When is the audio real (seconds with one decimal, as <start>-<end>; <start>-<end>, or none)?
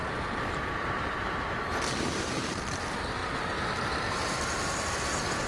3.2-4.1